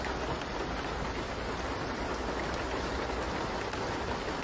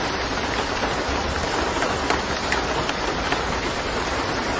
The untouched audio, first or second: first